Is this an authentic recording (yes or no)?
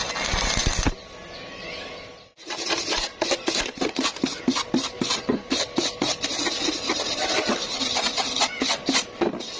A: yes